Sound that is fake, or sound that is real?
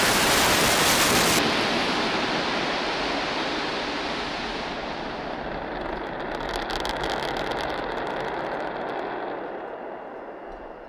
real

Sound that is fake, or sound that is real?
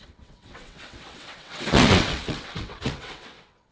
fake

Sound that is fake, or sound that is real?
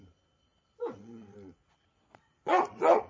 fake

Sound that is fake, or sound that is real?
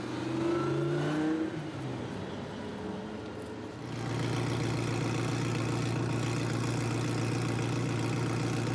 real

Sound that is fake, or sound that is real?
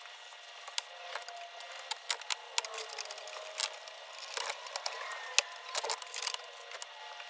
real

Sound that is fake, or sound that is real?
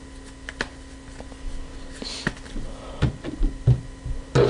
real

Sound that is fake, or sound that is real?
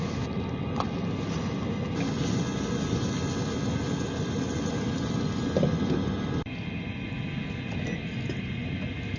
real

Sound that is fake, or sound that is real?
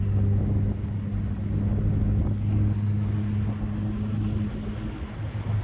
real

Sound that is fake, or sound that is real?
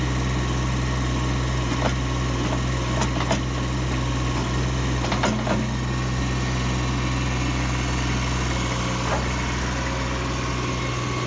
real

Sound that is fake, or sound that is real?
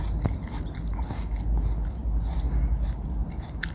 real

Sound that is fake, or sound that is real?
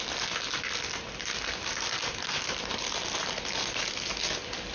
real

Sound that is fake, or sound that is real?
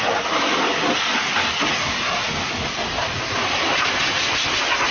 real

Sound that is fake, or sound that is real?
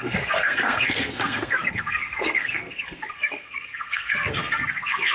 fake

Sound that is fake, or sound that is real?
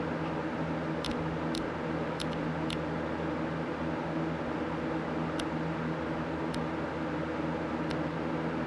real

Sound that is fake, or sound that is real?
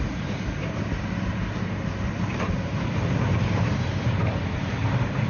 fake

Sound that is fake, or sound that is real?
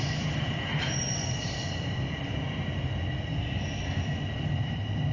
real